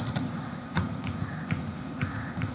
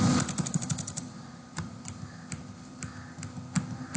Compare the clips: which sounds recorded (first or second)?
second